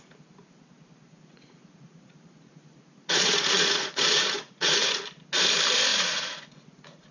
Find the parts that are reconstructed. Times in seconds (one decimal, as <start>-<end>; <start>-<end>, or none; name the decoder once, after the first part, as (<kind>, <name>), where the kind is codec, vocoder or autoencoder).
1.1-5.0 (vocoder, Vocos); 5.9-7.1